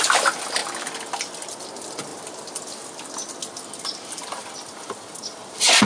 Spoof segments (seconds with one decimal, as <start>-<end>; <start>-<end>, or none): none

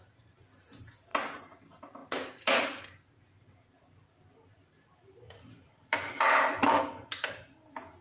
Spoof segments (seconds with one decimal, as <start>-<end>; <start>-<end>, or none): none

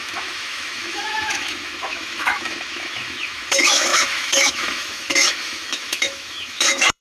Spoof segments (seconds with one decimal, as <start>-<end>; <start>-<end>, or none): 0.0-7.0

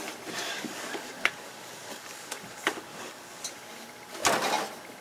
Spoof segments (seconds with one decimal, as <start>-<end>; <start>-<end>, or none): 0.5-3.4

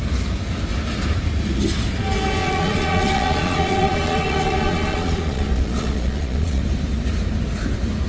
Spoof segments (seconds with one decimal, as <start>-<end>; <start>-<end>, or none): 2.4-6.6

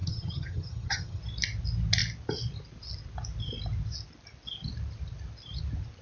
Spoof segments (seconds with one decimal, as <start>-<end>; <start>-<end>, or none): 0.0-1.2